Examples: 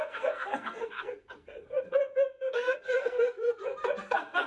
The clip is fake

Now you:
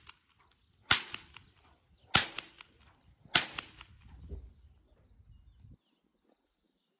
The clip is real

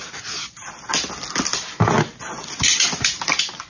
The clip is real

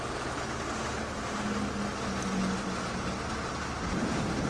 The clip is real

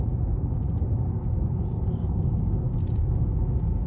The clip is fake